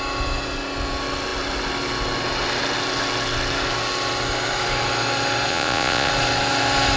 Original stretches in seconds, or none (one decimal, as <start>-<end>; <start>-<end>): 0.0-5.5; 6.1-7.0